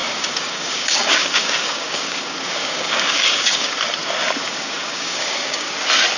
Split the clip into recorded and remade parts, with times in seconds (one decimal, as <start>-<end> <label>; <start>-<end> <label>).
0.0-3.7 remade; 3.7-4.4 recorded; 4.4-5.7 remade; 5.7-6.2 recorded